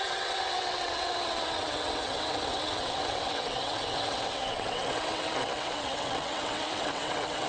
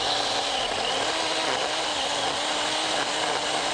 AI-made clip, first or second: first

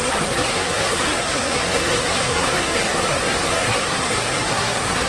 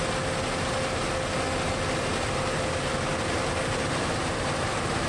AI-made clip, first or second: first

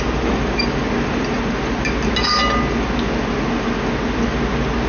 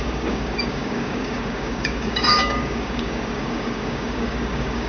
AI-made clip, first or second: second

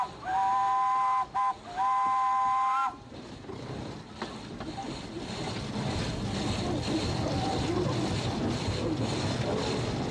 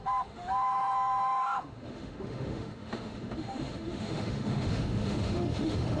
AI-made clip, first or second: second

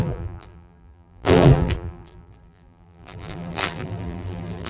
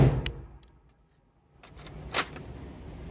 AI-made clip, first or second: first